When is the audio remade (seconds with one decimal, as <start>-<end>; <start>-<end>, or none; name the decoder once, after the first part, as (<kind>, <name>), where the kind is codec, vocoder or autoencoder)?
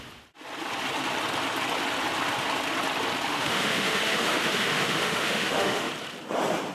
3.3-5.9 (autoencoder, DAC-VAE)